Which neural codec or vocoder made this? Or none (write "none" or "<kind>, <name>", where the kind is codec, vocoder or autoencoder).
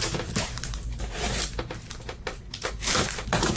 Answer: vocoder, BigVGAN v2